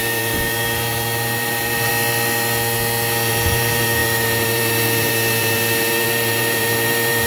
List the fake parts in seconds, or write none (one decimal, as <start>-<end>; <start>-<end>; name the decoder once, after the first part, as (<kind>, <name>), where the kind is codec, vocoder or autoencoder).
0.0-1.9 (vocoder, BigVGAN v2); 3.3-7.3